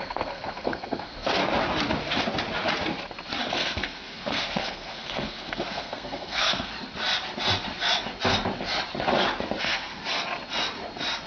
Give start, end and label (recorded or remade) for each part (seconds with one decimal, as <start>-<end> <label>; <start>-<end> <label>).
0.0-1.4 remade; 1.4-3.5 recorded; 3.5-6.7 remade; 6.7-9.6 recorded; 9.6-10.0 remade; 10.0-11.3 recorded

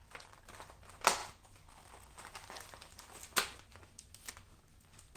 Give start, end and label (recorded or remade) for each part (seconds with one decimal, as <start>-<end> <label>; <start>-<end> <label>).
0.0-5.2 recorded

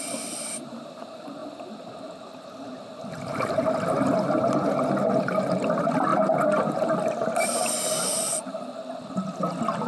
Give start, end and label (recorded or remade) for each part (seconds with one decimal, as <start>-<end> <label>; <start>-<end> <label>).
0.0-9.9 recorded

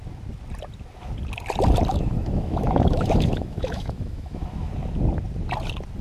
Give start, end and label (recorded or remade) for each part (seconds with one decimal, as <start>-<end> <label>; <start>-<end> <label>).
0.0-1.9 recorded; 1.9-4.7 remade; 4.7-6.0 recorded